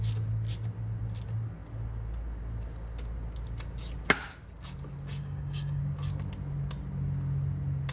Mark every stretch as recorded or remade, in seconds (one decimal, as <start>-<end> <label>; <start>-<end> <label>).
0.0-5.2 recorded; 5.2-5.8 remade; 5.8-7.9 recorded

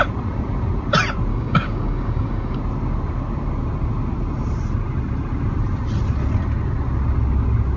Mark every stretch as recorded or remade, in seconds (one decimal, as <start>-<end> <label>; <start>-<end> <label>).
0.0-1.3 recorded; 1.3-2.6 remade; 2.6-7.8 recorded